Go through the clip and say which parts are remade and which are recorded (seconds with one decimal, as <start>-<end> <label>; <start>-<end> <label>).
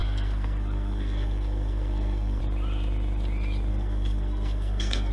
0.0-2.4 remade; 2.4-3.7 recorded; 3.7-5.1 remade